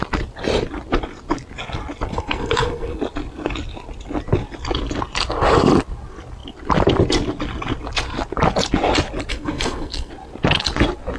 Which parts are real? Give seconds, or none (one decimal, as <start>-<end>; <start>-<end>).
0.0-2.1; 3.0-9.3; 10.1-11.2